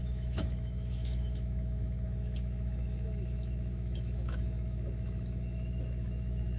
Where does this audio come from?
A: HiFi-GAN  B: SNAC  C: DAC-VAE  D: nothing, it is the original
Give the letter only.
C